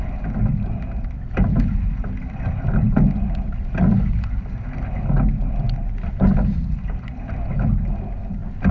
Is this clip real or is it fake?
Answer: real